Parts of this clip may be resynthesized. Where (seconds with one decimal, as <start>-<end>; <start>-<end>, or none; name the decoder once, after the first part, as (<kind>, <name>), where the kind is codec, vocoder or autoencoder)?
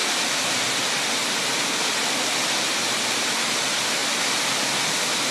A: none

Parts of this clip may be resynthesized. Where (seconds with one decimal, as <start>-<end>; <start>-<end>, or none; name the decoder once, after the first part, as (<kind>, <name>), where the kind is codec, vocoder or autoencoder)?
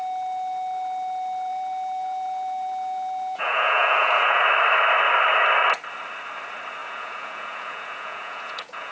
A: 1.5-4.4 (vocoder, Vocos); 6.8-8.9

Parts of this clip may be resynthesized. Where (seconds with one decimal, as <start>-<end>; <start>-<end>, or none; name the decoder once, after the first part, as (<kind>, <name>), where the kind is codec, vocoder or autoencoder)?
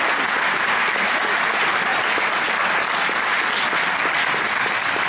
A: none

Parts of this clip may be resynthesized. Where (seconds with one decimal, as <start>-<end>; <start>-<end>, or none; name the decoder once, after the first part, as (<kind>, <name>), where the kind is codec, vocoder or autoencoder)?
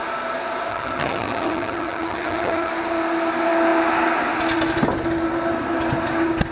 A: 0.7-2.7 (vocoder, HiFi-GAN)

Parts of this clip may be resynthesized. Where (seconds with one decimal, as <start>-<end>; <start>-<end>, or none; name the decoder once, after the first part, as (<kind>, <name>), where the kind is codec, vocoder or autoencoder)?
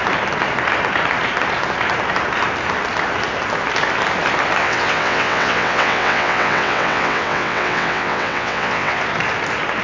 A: 4.6-9.0 (vocoder, WaveNeXt)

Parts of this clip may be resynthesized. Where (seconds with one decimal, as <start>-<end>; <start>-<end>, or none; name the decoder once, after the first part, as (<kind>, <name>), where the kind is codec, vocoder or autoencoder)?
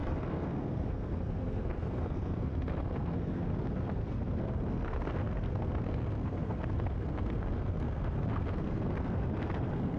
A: 0.0-10.0 (codec, SNAC)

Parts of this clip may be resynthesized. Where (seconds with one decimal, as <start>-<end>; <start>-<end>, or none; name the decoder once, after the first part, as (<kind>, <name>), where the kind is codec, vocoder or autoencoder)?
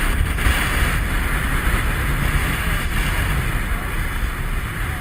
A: 2.4-2.9 (autoencoder, DAC-VAE)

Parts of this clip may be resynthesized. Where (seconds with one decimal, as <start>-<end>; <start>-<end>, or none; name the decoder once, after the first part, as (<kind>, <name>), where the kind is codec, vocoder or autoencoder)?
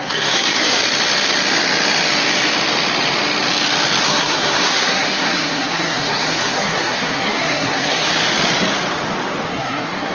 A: 0.0-0.8 (codec, SNAC); 4.0-8.1; 9.5-10.1